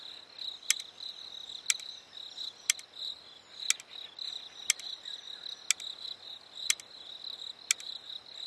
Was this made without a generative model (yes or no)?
yes